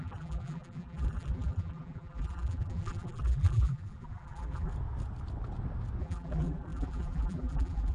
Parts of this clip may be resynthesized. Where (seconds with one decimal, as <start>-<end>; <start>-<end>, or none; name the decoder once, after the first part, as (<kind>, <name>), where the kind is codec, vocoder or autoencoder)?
0.0-4.7 (vocoder, BigVGAN v2); 6.0-7.9